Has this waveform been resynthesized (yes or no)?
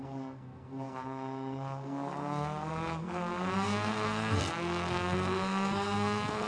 yes